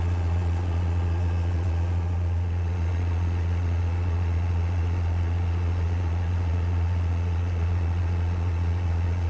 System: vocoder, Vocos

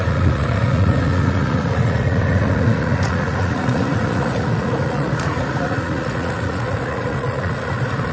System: vocoder, Vocos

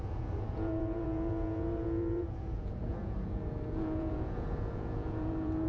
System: vocoder, Vocos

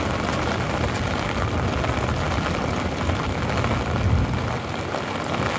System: none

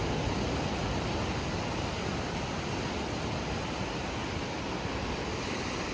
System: none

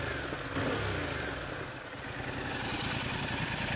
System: none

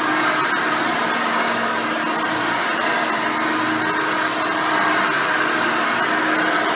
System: none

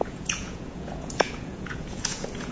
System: vocoder, Vocos